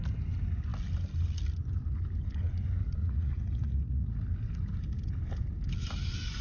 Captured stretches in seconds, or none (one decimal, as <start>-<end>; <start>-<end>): 0.0-3.0; 4.2-6.4